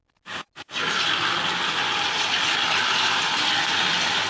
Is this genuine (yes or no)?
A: yes